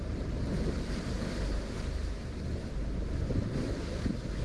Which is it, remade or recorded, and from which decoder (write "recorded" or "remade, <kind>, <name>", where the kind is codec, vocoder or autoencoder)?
recorded